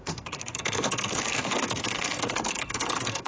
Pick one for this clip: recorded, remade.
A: remade